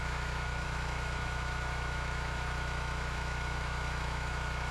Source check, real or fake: fake